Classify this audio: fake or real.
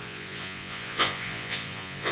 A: fake